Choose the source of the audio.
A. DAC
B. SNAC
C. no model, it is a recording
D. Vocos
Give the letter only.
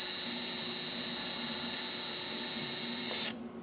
C